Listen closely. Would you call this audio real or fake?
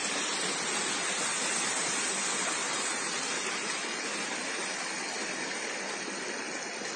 real